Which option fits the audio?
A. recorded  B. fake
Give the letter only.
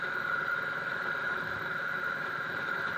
B